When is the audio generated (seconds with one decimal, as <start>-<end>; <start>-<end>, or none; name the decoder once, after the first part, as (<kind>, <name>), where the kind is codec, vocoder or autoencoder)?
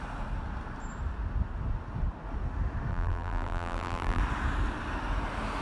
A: 2.9-4.2 (vocoder, BigVGAN v2)